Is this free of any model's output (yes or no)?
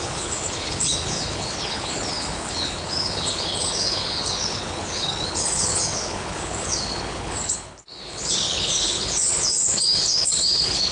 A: no